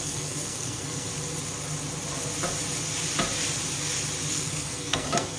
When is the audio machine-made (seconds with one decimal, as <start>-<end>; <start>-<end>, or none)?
0.0-1.1; 4.3-5.4